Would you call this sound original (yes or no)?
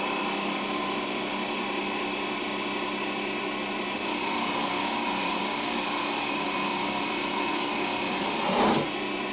no